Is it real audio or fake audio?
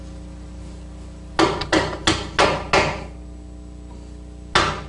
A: real